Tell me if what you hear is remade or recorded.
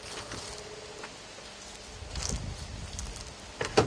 recorded